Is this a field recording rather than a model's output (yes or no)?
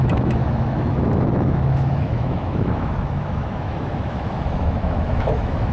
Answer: no